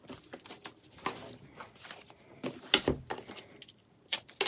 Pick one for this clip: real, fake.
real